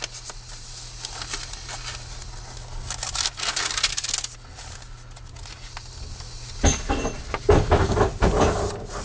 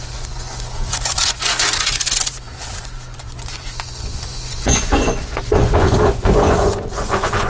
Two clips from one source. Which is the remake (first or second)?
second